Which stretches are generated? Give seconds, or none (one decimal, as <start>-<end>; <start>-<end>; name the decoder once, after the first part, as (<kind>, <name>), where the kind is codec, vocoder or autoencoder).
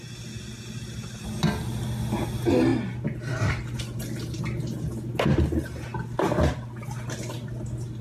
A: none